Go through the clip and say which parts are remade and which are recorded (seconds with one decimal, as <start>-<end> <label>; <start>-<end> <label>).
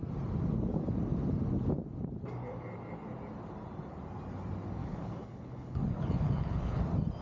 0.0-4.8 recorded; 4.8-6.8 remade; 6.8-7.2 recorded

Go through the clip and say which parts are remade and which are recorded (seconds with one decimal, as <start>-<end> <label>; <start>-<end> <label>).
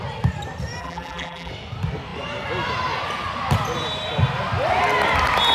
0.0-0.8 recorded; 0.8-1.5 remade; 1.5-5.5 recorded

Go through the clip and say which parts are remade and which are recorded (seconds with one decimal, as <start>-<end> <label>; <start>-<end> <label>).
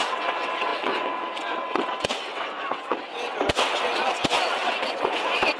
0.0-5.6 remade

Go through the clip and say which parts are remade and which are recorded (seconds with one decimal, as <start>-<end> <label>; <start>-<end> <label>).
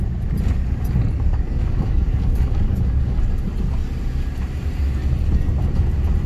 0.0-1.3 recorded; 1.3-3.2 remade; 3.2-6.3 recorded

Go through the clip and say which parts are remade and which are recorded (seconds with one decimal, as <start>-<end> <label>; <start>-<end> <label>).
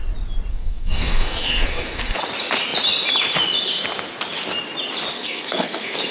0.0-0.5 recorded; 0.5-2.2 remade; 2.2-5.1 recorded; 5.1-6.1 remade